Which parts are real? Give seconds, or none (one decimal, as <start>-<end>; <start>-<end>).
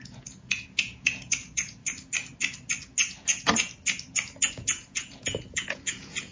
1.8-4.5